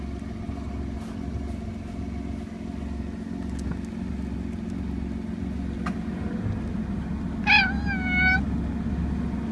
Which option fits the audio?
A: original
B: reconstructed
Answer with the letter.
A